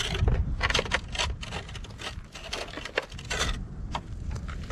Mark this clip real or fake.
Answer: real